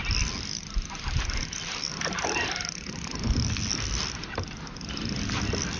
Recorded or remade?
recorded